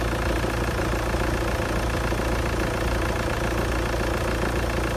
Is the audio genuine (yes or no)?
yes